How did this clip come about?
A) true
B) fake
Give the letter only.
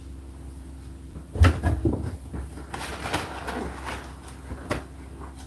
A